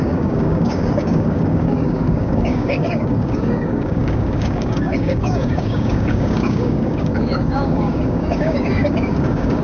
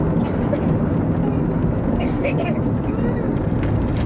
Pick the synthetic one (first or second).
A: first